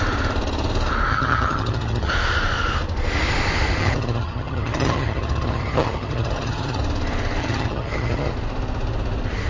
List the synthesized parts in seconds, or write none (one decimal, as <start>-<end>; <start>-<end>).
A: 1.1-2.1; 3.8-6.8; 7.4-8.3